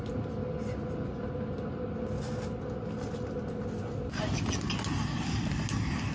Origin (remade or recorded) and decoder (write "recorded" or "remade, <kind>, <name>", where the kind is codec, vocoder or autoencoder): recorded